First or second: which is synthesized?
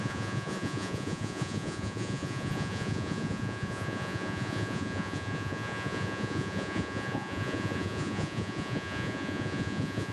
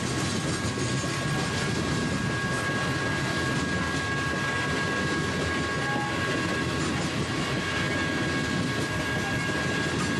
first